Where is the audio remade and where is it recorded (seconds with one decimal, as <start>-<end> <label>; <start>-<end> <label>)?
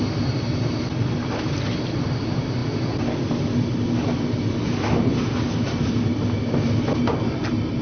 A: 0.0-7.8 recorded